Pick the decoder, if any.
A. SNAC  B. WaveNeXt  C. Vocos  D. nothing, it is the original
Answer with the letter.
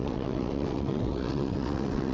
B